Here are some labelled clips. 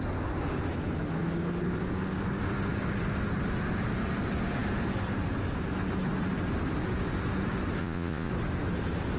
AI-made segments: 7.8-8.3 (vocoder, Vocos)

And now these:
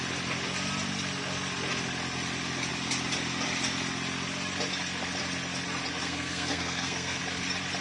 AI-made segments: 6.0-7.2 (codec, SNAC)

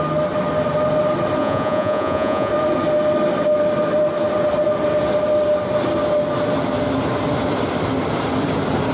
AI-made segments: 1.4-2.5 (vocoder, Vocos)

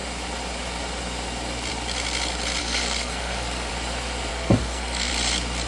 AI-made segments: 2.6-3.7 (codec, SNAC); 4.3-5.1

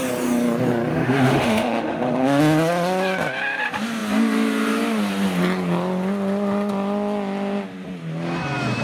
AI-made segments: 0.9-2.4 (autoencoder, DAC-VAE)

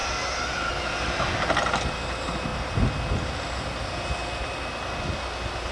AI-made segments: none

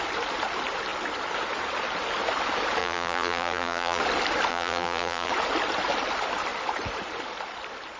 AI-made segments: 2.8-4.0 (vocoder, BigVGAN v2); 4.5-5.3